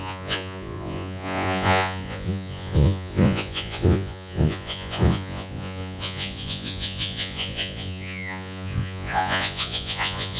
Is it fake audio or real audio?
fake